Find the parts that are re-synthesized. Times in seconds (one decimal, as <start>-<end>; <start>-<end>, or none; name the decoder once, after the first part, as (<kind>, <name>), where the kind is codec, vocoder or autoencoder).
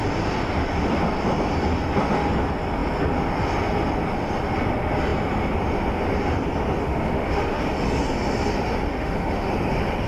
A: 6.8-7.6 (autoencoder, DAC-VAE); 8.9-9.5